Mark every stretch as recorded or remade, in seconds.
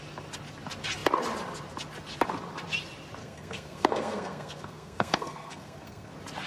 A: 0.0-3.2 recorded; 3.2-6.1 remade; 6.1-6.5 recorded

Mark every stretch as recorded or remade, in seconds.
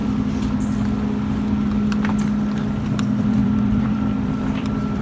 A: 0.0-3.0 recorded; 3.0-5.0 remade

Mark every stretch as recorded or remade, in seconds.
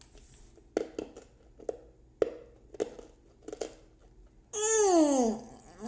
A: 0.0-5.9 recorded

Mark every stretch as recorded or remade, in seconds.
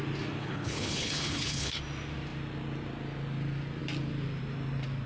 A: 0.0-0.4 recorded; 0.4-1.8 remade; 1.8-5.1 recorded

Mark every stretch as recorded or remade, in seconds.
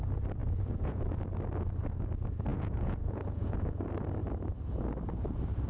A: 0.0-0.4 recorded; 0.4-1.0 remade; 1.0-2.5 recorded; 2.5-3.8 remade; 3.8-5.7 recorded